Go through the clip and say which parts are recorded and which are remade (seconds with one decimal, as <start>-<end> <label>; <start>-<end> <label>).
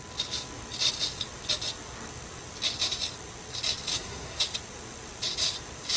0.0-3.9 recorded; 3.9-4.4 remade; 4.4-6.0 recorded